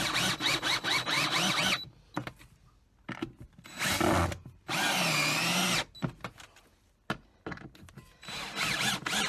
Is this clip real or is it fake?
real